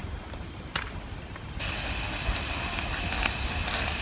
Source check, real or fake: real